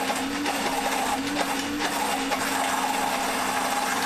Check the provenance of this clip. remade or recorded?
recorded